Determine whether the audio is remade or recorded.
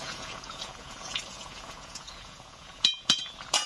remade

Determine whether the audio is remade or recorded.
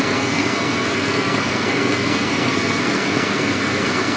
remade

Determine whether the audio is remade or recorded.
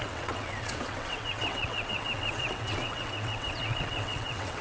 remade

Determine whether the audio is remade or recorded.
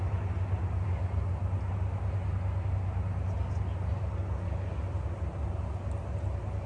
recorded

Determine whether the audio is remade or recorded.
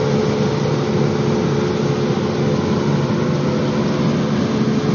recorded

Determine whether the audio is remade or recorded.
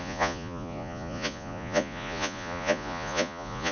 remade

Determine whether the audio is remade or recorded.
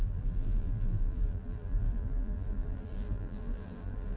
remade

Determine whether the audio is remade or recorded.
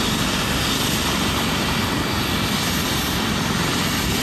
recorded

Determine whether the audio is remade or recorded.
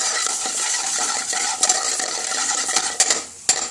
recorded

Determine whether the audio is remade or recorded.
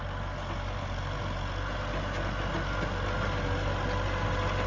recorded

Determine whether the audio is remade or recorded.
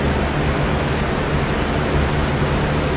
recorded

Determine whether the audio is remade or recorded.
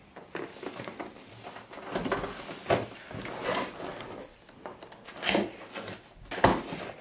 recorded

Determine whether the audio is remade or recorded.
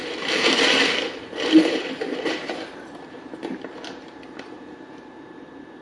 remade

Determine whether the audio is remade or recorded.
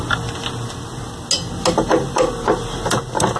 recorded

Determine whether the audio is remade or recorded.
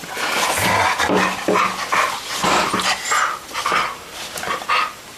recorded